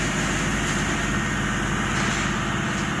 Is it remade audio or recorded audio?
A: recorded